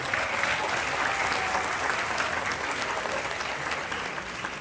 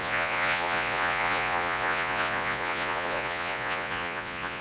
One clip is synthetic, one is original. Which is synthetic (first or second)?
second